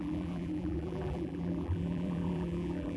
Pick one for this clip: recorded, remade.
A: remade